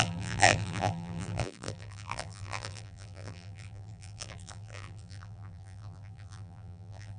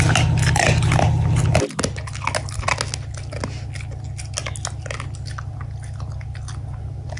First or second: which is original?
second